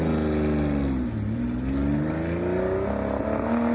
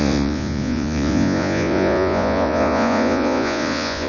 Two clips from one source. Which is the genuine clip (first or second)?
first